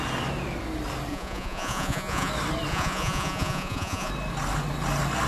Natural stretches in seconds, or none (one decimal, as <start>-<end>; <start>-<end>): 0.0-1.1; 2.3-2.7; 4.1-5.3

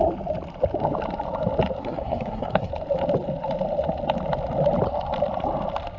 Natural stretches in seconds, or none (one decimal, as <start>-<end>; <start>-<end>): 0.0-1.8; 2.7-6.0